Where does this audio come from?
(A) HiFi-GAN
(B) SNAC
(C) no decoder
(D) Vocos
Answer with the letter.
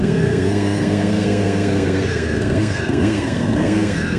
B